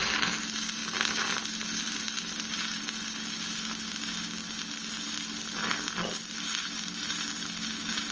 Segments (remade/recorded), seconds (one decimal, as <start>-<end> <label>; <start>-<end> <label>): 0.0-8.1 recorded